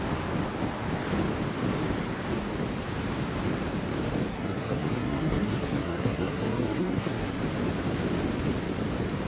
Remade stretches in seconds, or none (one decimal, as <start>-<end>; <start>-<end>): 4.3-7.4